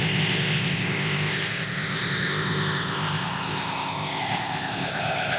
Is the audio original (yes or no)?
no